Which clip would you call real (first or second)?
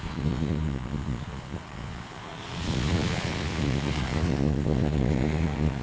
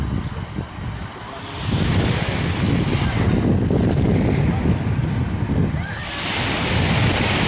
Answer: second